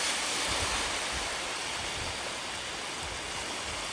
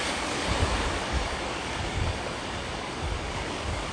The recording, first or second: first